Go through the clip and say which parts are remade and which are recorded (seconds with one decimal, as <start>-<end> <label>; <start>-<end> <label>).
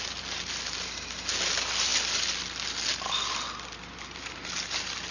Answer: 0.0-5.1 recorded